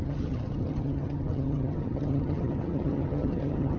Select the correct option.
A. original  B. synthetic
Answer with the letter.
B